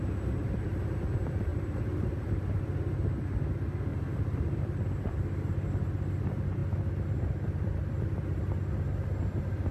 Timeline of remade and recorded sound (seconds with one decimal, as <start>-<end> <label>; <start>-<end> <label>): 0.0-1.5 recorded; 1.5-2.8 remade; 2.8-3.9 recorded; 3.9-4.6 remade; 4.6-9.7 recorded